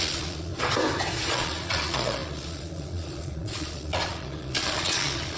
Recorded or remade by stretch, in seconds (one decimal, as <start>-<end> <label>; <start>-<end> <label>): 0.0-0.5 remade; 0.5-1.3 recorded; 1.3-5.4 remade